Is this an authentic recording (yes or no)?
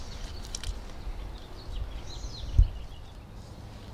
yes